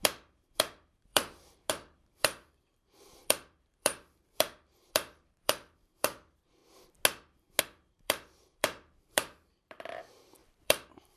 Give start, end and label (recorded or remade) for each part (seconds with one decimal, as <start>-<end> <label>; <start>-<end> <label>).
0.0-6.6 remade; 6.6-7.6 recorded; 7.6-11.2 remade